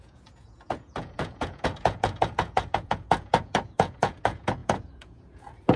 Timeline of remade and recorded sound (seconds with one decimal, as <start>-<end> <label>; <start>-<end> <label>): 0.0-5.8 remade

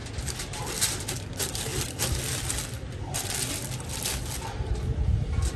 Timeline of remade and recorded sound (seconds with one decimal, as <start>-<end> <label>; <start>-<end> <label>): 0.0-5.6 recorded

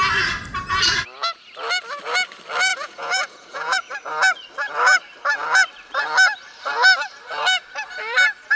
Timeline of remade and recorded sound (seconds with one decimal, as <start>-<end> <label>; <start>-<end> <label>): 0.0-2.7 recorded; 2.7-3.9 remade; 3.9-8.6 recorded

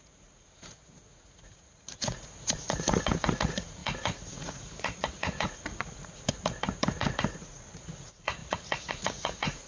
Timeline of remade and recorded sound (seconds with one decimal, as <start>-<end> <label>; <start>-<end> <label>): 0.0-9.7 remade

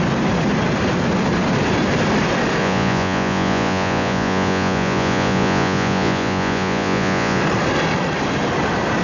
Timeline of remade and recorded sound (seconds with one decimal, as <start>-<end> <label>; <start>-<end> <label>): 0.0-2.6 recorded; 2.6-7.4 remade; 7.4-9.0 recorded

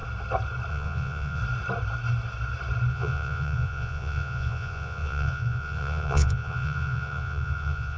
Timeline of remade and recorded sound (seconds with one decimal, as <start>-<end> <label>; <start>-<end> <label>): 0.0-0.7 recorded; 0.7-1.4 remade; 1.4-2.9 recorded; 2.9-8.0 remade

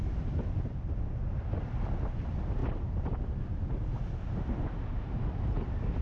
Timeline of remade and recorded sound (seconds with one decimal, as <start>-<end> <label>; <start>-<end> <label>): 0.0-6.0 recorded